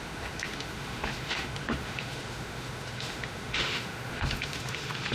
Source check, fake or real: fake